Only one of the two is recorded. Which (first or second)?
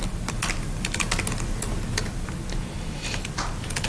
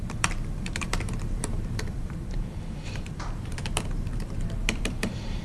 first